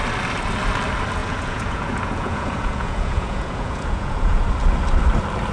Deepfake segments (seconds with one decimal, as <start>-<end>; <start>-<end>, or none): 1.2-4.5